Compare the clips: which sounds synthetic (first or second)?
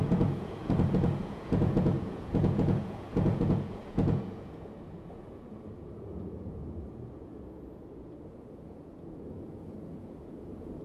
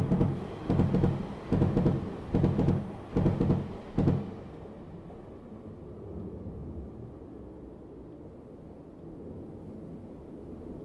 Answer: first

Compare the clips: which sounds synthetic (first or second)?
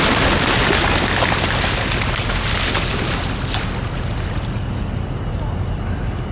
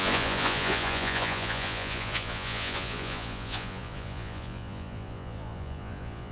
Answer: second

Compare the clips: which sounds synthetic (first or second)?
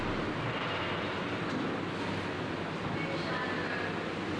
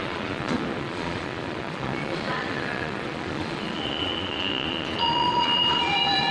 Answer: second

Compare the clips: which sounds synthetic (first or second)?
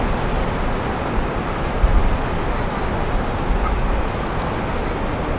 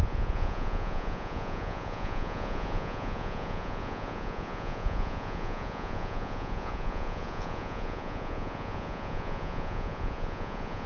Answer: second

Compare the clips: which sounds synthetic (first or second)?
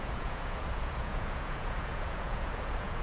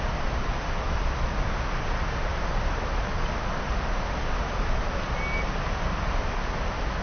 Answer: first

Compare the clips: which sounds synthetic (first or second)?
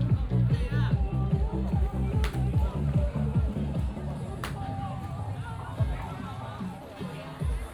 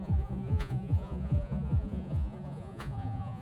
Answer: second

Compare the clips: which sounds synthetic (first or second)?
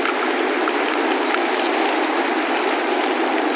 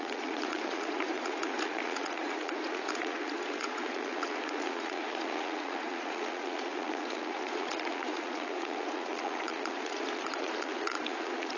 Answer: second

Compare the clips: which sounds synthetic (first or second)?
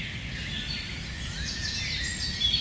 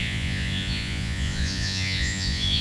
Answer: second